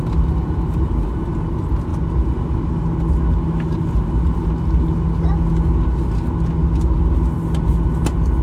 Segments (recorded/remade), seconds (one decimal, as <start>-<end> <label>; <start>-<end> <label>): 0.0-8.4 recorded